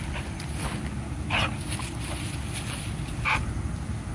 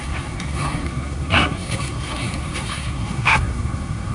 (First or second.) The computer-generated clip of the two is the second